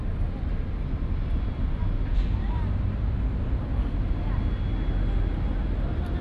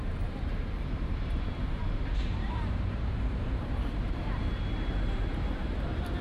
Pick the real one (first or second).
first